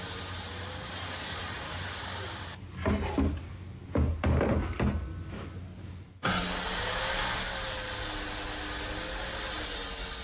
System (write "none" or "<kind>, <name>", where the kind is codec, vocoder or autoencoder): none